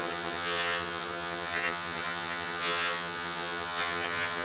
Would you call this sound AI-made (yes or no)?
yes